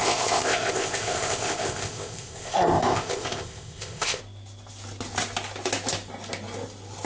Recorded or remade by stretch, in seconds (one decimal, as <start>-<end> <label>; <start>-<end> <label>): 0.0-4.2 remade; 4.2-7.0 recorded